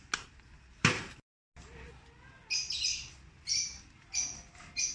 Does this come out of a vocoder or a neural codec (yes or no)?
no